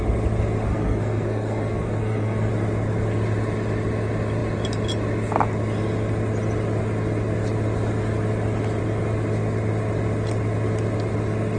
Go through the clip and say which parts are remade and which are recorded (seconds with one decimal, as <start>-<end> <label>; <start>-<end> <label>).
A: 0.0-0.7 recorded; 0.7-2.5 remade; 2.5-11.6 recorded